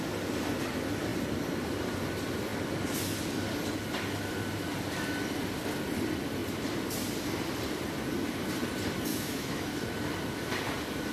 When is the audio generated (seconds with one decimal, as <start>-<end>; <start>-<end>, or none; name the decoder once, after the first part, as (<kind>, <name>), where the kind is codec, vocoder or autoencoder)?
9.1-9.7 (autoencoder, DAC-VAE)